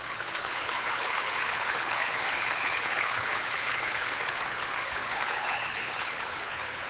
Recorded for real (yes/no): no